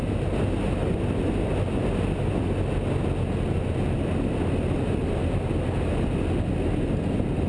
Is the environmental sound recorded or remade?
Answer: recorded